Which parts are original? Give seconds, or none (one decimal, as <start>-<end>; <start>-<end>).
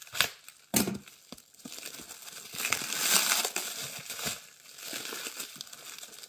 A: 0.0-6.3